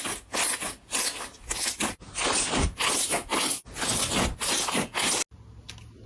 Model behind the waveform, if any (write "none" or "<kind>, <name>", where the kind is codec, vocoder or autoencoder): none